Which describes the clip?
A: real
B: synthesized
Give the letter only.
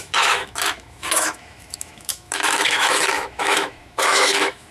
B